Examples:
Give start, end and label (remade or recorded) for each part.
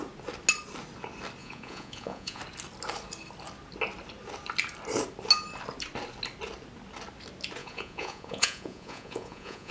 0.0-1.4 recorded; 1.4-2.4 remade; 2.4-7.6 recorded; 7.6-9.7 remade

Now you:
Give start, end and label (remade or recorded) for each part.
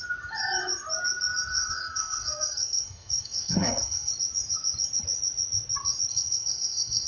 0.0-1.5 recorded; 1.5-4.1 remade; 4.1-6.1 recorded; 6.1-7.1 remade